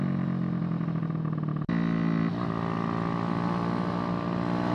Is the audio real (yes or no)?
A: yes